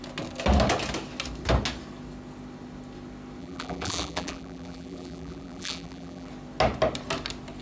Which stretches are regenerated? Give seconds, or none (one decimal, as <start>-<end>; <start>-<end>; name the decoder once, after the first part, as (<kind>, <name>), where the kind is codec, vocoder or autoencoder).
3.4-6.3 (vocoder, BigVGAN v2)